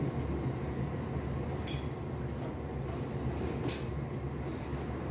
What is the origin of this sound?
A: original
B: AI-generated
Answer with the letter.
A